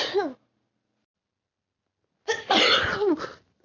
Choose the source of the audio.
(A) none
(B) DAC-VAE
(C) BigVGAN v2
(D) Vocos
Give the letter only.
A